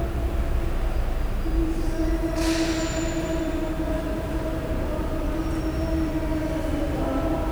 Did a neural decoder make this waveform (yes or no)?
no